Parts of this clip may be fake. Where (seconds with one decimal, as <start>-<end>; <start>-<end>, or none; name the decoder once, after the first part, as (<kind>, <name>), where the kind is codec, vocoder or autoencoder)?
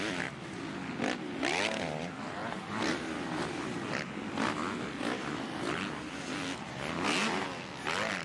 none